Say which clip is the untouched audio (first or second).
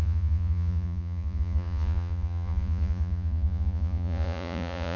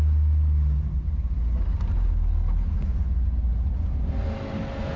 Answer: second